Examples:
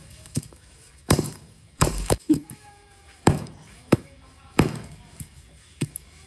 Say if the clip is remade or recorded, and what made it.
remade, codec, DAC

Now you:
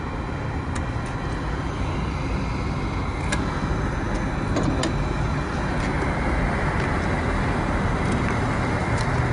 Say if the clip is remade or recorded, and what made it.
recorded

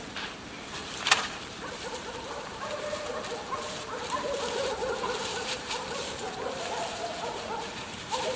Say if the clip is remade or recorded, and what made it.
remade, vocoder, BigVGAN v2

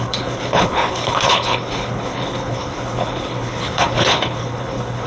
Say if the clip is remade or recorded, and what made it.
remade, codec, HILCodec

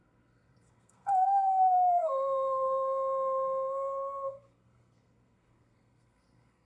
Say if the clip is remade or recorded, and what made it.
remade, codec, SNAC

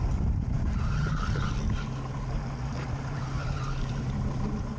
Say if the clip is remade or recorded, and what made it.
recorded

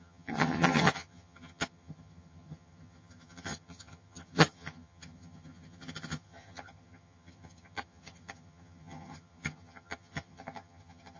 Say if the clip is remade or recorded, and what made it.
remade, vocoder, HiFi-GAN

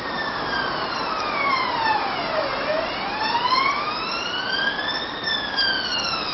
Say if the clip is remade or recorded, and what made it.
recorded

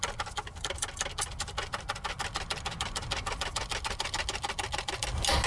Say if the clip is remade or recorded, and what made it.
recorded